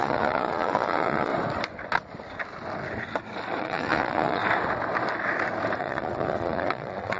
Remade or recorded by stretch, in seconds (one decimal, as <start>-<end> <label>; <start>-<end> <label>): 0.0-1.3 remade; 1.3-3.6 recorded; 3.6-4.4 remade; 4.4-5.8 recorded; 5.8-7.2 remade